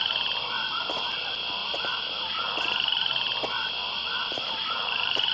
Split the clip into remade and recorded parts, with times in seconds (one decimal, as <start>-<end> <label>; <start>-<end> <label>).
0.0-4.2 recorded; 4.2-5.3 remade